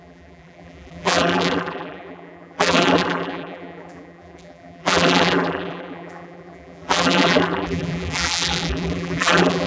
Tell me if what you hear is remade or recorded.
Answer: remade